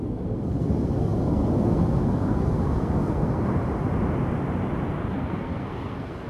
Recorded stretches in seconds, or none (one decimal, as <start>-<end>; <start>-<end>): 3.5-5.1